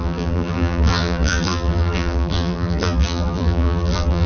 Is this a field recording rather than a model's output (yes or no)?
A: no